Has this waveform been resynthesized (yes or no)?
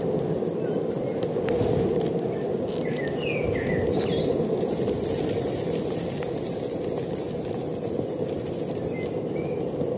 no